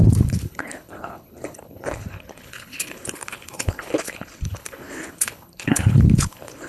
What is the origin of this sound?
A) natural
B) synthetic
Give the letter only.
B